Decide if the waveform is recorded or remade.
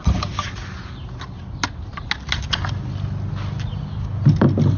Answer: recorded